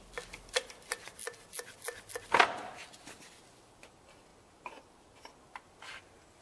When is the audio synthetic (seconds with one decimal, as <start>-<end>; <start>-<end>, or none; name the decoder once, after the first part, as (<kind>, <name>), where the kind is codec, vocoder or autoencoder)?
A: none